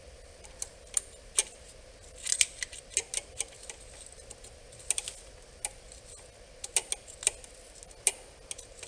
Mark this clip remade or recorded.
recorded